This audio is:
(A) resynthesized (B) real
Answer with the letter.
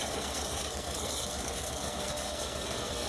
A